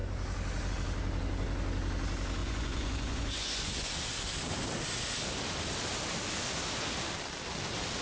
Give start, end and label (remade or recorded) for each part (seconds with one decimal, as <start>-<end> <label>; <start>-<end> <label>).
0.0-2.4 recorded; 2.4-3.9 remade; 3.9-8.0 recorded